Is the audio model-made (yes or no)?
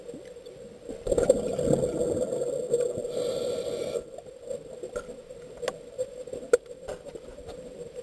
no